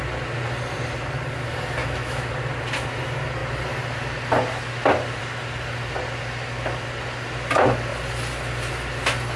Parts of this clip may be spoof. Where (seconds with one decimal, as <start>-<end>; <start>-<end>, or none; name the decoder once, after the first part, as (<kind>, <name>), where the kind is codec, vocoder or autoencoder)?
1.8-2.3 (autoencoder, DAC-VAE)